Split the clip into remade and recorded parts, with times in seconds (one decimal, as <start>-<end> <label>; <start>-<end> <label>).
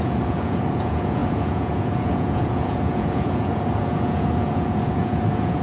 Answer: 0.0-5.6 remade